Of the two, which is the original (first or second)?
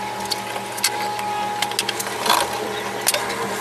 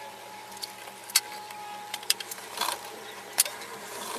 first